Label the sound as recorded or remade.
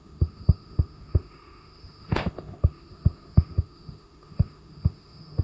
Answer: remade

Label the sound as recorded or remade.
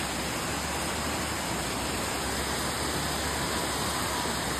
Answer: recorded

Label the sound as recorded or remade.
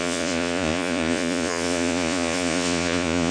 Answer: remade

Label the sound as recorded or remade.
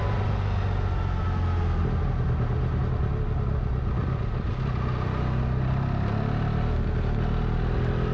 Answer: recorded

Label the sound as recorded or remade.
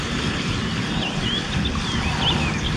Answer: recorded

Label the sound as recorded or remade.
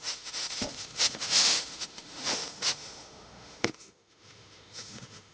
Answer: remade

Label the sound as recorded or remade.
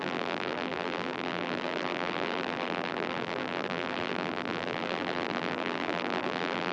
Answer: remade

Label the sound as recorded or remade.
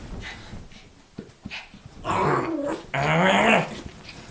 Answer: recorded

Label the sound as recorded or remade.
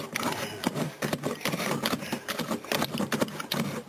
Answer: recorded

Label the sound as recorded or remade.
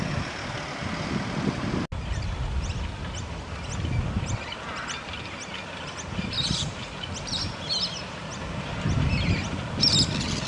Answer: recorded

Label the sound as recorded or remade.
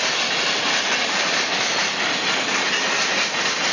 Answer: recorded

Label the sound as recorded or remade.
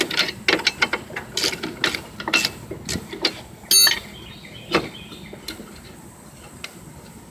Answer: recorded